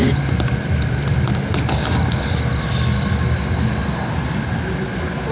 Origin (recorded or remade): recorded